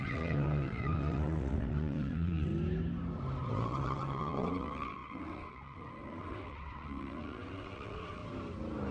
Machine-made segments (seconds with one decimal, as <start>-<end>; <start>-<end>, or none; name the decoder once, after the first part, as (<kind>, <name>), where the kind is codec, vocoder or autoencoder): 0.0-2.5 (vocoder, WaveNeXt); 3.5-8.2